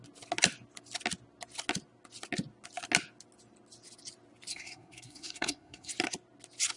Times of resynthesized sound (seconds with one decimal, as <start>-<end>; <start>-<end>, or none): 4.5-5.9